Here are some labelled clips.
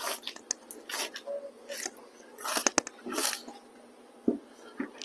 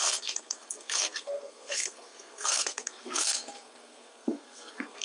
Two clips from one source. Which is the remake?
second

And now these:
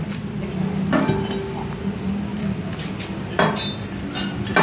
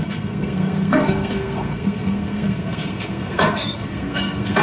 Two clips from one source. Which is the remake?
second